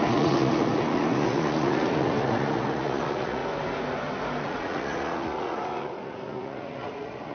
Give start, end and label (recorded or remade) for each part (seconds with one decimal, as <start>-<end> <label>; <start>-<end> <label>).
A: 0.0-3.4 remade; 3.4-4.4 recorded; 4.4-7.3 remade